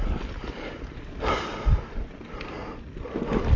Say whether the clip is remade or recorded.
recorded